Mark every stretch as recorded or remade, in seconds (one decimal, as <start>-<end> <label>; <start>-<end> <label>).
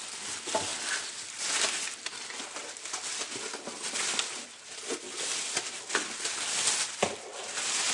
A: 0.0-7.9 recorded